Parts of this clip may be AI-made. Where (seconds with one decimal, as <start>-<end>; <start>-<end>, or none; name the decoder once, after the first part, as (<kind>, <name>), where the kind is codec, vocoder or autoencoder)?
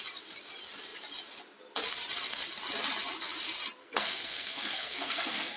3.8-5.6 (codec, SNAC)